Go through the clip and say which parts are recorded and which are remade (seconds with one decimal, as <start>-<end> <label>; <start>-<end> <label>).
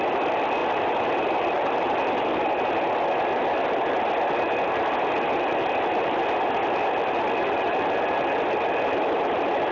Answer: 0.0-9.7 recorded